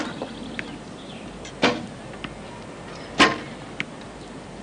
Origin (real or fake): real